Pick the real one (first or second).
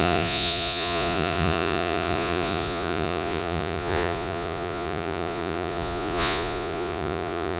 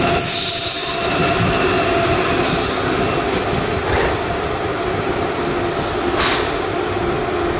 second